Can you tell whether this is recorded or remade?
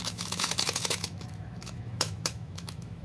remade